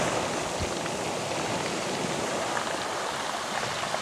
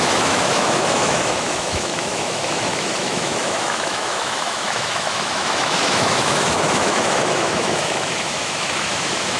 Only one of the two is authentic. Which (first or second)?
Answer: first